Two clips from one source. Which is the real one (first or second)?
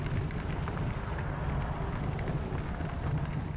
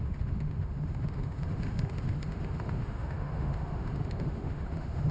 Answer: first